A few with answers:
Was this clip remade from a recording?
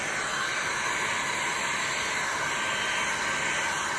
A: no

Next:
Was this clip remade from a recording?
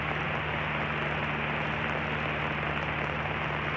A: no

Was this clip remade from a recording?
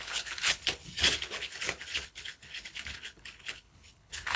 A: yes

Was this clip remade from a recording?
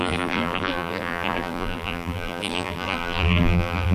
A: yes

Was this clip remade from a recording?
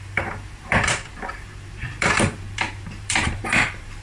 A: yes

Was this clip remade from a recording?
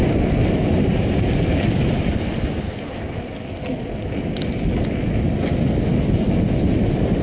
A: no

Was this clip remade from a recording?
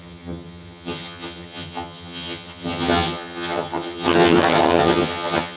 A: yes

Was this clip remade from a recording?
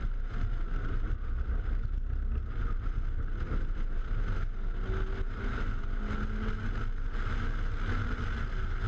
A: no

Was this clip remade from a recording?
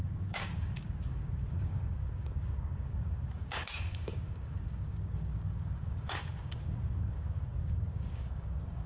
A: yes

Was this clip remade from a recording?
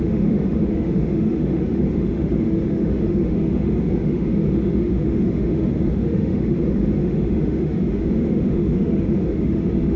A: yes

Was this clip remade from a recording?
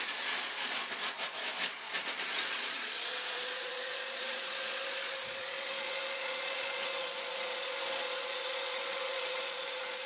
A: yes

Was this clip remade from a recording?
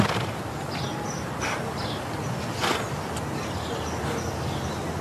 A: no